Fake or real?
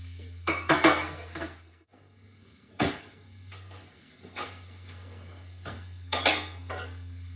fake